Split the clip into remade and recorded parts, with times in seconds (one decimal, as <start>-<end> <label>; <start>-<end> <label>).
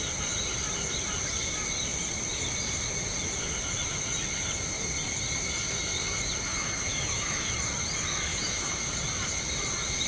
0.0-6.5 recorded; 6.5-7.5 remade; 7.5-8.3 recorded; 8.3-8.8 remade; 8.8-10.1 recorded